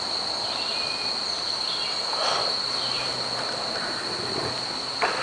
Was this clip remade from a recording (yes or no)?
no